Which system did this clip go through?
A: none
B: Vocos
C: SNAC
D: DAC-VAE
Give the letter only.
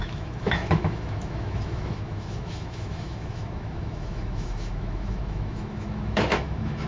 D